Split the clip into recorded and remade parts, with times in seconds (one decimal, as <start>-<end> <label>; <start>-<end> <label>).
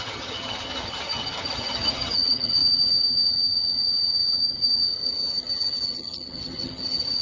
0.0-7.2 remade